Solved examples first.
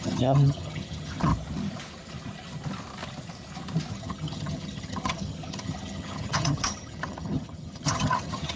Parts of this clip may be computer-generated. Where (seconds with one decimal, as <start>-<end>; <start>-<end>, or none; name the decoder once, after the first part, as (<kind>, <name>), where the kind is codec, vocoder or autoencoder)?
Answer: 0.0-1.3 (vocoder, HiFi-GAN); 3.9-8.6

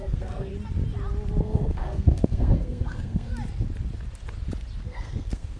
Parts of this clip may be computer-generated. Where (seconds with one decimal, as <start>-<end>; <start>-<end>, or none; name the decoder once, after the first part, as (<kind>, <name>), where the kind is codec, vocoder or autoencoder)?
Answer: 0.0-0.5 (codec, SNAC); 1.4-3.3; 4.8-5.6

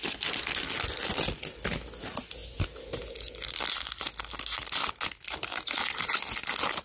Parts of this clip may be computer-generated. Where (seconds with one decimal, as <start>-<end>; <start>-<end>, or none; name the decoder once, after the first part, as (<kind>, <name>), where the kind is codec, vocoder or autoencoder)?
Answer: none